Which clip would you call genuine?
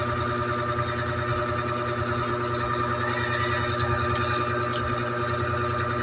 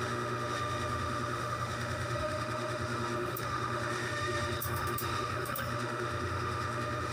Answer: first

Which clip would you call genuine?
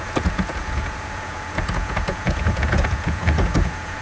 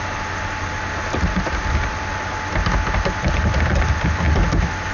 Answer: second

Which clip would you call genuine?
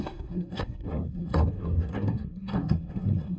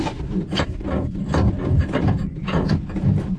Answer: second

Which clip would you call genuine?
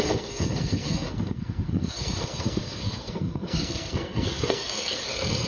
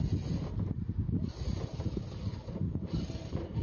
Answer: second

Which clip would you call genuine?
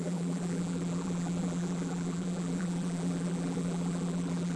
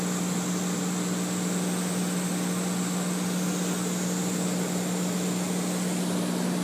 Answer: second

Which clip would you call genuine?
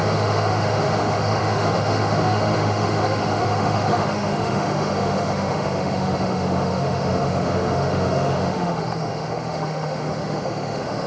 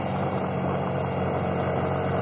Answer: second